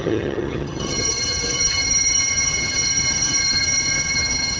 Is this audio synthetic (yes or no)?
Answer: yes